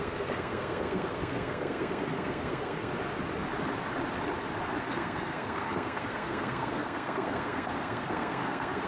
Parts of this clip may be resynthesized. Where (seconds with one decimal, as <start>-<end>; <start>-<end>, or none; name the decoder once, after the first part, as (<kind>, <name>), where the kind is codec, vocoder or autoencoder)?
0.0-2.9 (codec, SNAC); 4.8-8.9